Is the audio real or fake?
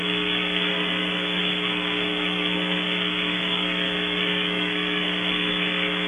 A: fake